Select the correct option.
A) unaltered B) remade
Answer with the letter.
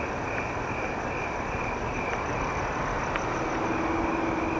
A